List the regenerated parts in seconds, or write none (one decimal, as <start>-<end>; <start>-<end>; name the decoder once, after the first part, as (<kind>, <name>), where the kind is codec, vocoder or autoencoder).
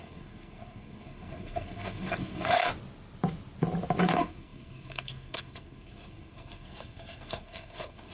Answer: 0.0-2.7 (codec, SNAC); 4.0-8.1